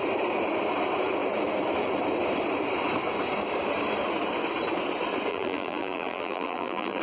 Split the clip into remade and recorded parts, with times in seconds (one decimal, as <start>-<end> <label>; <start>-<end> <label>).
0.0-5.3 recorded; 5.3-7.0 remade